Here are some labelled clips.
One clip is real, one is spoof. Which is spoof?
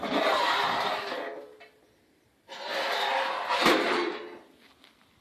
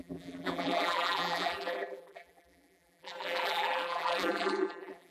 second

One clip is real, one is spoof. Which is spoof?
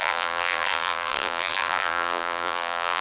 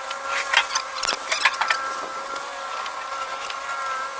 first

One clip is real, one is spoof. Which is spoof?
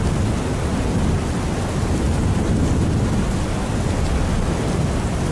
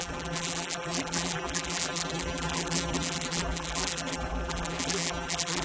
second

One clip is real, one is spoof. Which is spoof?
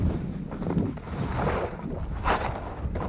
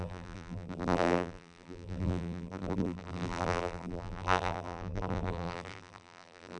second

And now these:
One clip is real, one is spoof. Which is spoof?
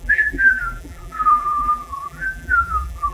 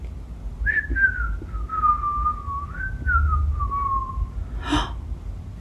first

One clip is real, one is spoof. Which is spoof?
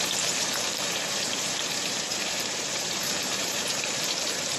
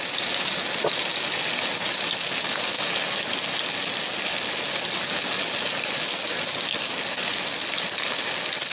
first